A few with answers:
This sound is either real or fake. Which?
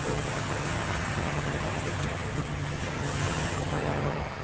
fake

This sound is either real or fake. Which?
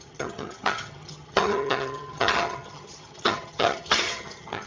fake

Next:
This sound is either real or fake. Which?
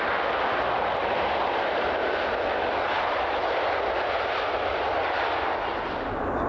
real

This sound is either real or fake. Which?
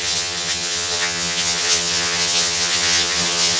fake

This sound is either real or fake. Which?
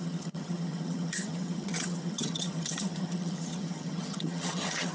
fake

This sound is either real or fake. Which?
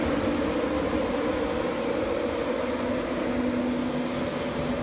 real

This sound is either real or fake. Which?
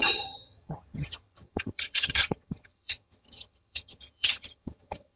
fake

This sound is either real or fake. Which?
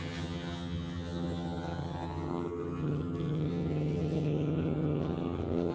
fake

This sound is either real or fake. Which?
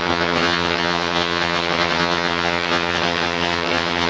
fake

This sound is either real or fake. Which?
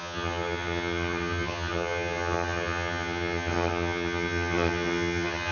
fake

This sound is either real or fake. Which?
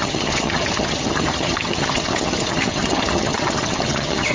fake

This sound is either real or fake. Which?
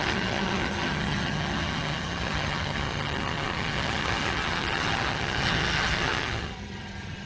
fake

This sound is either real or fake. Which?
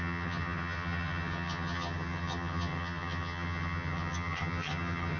fake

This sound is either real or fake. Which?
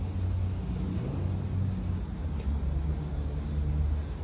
real